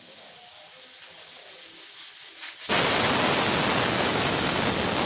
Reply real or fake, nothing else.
real